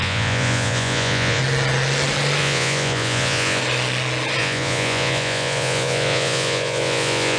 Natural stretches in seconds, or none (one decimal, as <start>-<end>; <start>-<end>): 1.4-2.4; 3.6-4.4